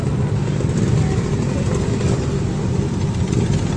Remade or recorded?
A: recorded